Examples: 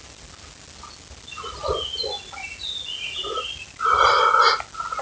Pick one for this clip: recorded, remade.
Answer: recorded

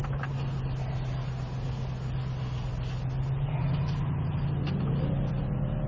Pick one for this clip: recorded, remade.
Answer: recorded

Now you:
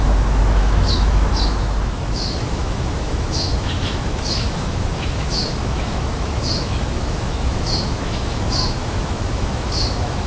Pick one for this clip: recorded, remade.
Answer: remade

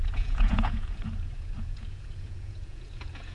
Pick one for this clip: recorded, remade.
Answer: remade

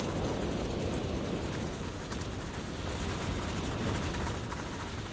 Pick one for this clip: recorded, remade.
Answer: recorded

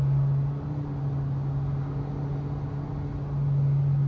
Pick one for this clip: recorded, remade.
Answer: recorded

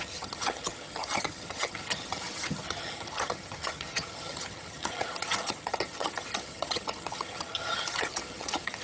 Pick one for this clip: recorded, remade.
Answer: remade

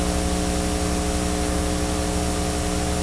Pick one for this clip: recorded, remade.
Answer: recorded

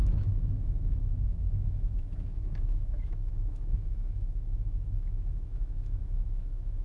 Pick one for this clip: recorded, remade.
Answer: remade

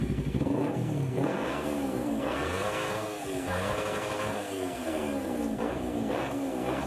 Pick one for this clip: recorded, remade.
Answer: remade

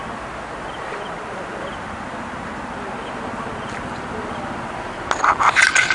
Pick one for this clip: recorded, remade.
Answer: recorded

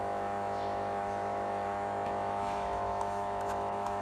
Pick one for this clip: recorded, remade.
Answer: remade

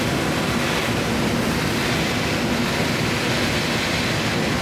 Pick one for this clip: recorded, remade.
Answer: recorded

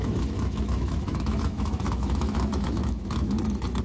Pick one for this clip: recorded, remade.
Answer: remade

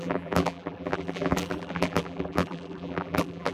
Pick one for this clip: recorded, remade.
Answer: remade